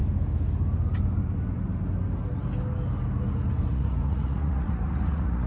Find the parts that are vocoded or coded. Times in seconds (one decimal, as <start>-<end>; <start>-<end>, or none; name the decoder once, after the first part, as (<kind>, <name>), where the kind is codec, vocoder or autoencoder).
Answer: 3.7-5.5 (vocoder, Vocos)